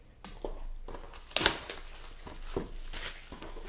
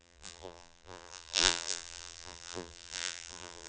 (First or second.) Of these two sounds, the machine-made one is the second